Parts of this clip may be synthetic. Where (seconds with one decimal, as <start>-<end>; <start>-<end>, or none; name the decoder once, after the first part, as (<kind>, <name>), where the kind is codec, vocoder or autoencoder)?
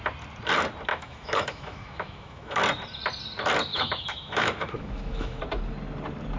0.9-2.6 (autoencoder, DAC-VAE); 3.7-5.4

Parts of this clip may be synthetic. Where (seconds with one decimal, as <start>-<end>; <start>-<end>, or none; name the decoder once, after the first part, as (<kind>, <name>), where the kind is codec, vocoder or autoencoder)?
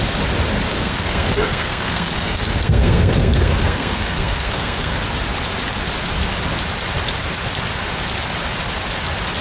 0.7-5.0 (codec, SNAC)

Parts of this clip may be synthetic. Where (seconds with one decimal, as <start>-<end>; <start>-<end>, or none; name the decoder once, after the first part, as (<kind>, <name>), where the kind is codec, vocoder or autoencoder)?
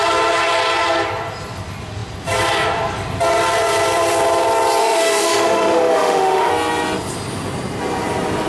4.8-6.5 (autoencoder, DAC-VAE)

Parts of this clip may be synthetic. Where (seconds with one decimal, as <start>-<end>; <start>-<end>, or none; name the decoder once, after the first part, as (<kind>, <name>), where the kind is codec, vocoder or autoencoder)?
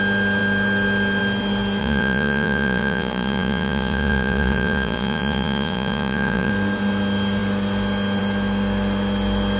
1.8-6.5 (vocoder, Vocos)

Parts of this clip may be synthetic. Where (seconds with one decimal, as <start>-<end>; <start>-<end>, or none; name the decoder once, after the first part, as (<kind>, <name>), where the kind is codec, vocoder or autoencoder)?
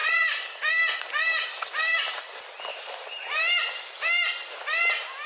2.7-4.1 (vocoder, BigVGAN v2)